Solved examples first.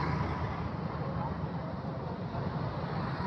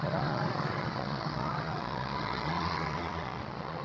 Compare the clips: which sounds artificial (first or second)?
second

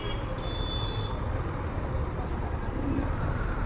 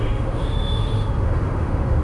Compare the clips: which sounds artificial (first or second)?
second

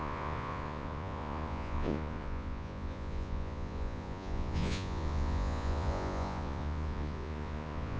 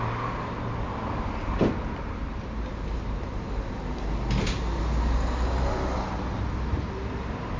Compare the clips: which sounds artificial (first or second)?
first